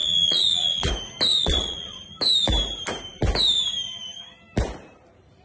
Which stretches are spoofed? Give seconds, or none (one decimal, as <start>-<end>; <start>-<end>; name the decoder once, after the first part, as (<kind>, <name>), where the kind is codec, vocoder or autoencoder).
0.0-0.9 (vocoder, Vocos); 1.3-2.0